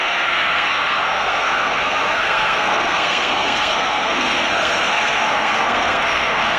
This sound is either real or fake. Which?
fake